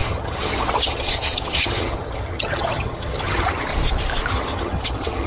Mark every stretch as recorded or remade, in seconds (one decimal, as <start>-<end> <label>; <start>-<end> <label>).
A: 0.0-3.7 remade; 3.7-4.3 recorded; 4.3-5.3 remade

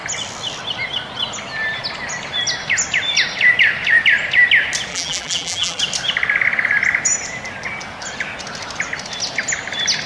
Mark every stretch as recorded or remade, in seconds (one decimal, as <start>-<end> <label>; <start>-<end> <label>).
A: 0.0-4.9 recorded; 4.9-5.8 remade; 5.8-10.1 recorded

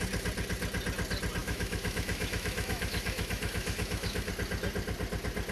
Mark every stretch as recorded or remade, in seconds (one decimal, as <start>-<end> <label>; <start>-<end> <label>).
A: 0.0-1.4 recorded; 1.4-4.3 remade; 4.3-5.5 recorded

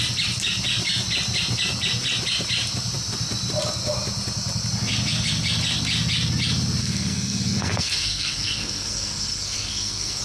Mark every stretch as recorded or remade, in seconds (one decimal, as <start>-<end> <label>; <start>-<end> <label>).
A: 0.0-6.8 recorded; 6.8-10.2 remade

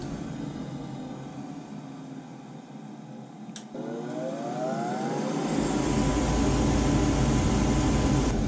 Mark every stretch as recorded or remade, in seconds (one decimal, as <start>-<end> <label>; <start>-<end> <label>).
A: 0.0-8.5 recorded

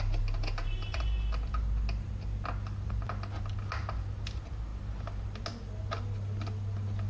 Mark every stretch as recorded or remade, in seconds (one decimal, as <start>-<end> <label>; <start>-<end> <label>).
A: 0.0-7.1 recorded

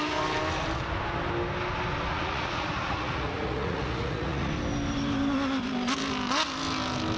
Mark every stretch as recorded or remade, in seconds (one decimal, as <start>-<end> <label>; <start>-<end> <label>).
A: 0.0-2.1 recorded; 2.1-4.5 remade; 4.5-7.2 recorded

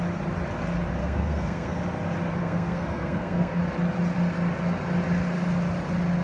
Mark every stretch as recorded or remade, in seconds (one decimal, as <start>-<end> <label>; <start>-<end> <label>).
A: 0.0-1.0 recorded; 1.0-1.8 remade; 1.8-2.4 recorded; 2.4-3.6 remade; 3.6-6.2 recorded